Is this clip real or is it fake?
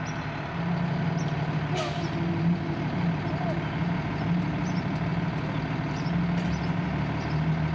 real